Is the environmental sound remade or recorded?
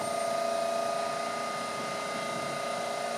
recorded